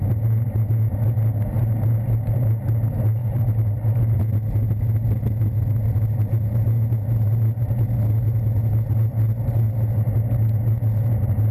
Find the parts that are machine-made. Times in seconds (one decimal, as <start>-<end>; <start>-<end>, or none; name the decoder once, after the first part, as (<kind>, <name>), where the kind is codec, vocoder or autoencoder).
3.2-4.2 (vocoder, BigVGAN v2)